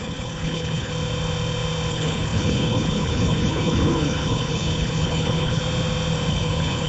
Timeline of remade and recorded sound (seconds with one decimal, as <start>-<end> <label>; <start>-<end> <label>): 0.0-0.9 remade; 0.9-1.9 recorded; 1.9-5.6 remade; 5.6-6.3 recorded; 6.3-6.9 remade